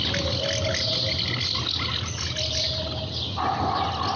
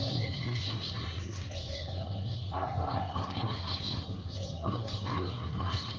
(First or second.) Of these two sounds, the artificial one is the second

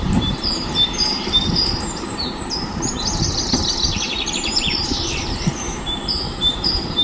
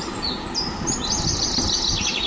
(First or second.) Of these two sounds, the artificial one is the first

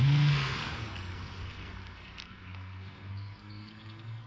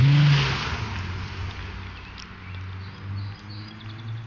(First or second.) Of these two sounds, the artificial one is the first